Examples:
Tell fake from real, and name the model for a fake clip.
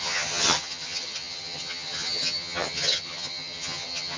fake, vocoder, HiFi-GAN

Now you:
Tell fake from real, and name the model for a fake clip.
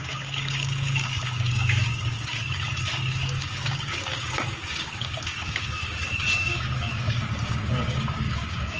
fake, codec, DAC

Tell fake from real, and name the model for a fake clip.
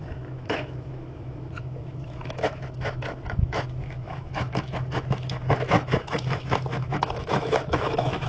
fake, autoencoder, DAC-VAE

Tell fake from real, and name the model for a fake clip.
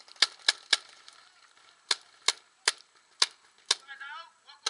real